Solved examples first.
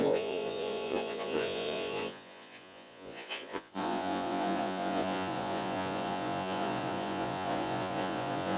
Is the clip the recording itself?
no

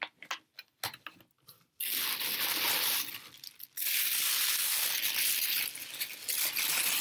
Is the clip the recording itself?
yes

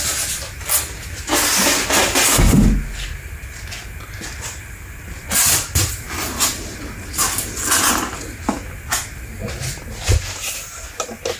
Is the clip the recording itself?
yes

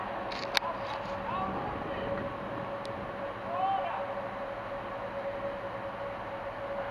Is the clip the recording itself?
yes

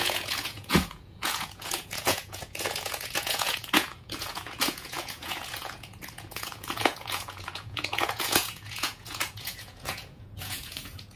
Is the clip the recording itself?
no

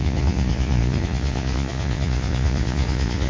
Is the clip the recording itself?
no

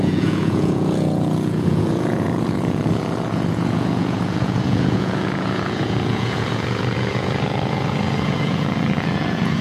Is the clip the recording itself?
no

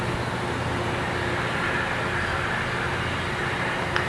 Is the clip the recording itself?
yes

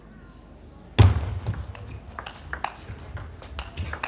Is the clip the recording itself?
yes